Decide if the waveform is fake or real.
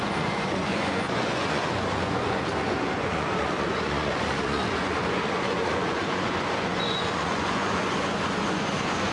fake